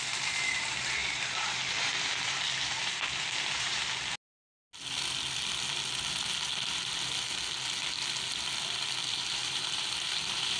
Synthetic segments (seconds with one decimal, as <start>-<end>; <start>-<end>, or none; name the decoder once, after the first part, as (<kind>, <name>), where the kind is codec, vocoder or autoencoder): 0.0-3.8 (vocoder, BigVGAN v2); 9.1-10.6